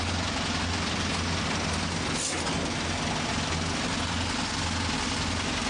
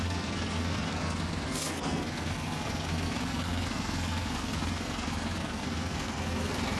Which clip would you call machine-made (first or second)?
second